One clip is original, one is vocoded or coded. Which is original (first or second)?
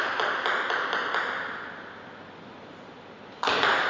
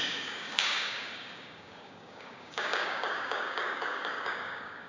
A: first